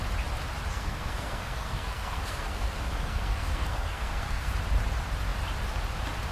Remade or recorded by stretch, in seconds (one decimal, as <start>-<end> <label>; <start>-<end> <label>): 0.0-0.7 recorded; 0.7-4.5 remade; 4.5-6.3 recorded